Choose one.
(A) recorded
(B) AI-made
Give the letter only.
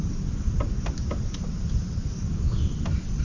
A